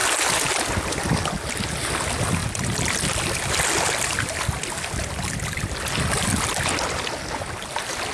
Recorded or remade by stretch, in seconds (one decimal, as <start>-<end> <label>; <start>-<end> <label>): 0.0-8.1 recorded